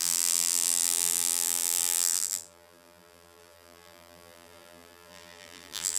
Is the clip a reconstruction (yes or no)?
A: yes